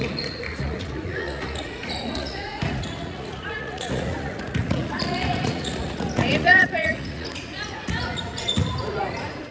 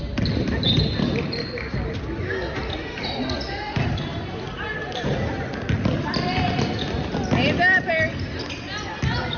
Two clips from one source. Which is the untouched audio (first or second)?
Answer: second